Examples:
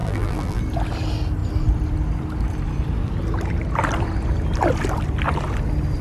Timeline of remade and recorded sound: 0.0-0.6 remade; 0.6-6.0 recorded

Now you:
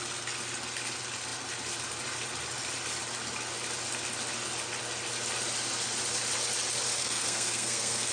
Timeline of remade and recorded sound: 0.0-7.0 recorded; 7.0-8.1 remade